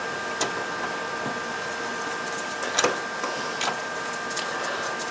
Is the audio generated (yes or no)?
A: no